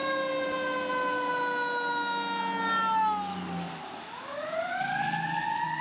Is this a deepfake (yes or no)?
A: no